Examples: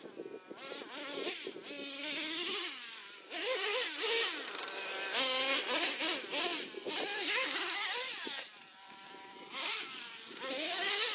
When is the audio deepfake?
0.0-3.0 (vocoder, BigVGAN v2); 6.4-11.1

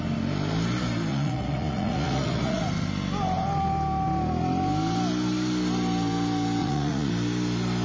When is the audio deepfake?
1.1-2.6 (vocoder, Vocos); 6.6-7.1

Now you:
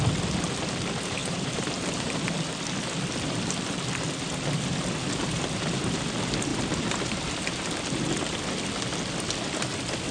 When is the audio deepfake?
1.2-2.2 (vocoder, BigVGAN v2); 6.5-7.6

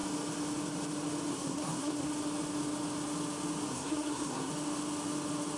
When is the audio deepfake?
1.3-2.1 (codec, SNAC); 3.7-4.5

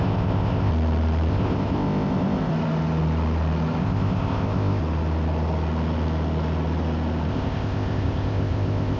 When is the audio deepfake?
0.0-0.7 (codec, ZipCodec); 1.3-2.5; 3.8-4.8; 7.3-9.0

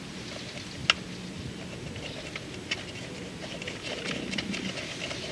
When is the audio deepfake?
none

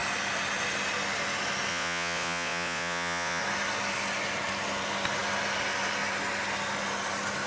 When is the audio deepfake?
1.7-3.4 (vocoder, Vocos)

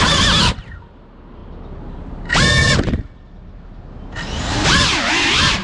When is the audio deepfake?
none